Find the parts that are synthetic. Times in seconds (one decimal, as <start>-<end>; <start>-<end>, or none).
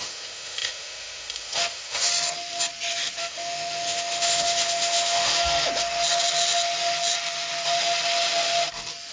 0.0-2.1; 3.2-5.3